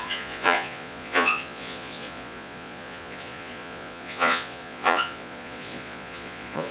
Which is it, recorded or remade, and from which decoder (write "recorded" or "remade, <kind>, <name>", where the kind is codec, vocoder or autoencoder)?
remade, vocoder, Vocos